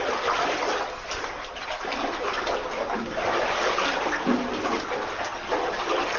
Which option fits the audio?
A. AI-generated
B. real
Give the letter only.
B